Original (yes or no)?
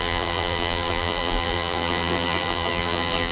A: no